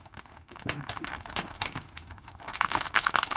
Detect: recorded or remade remade